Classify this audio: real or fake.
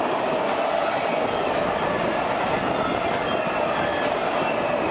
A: real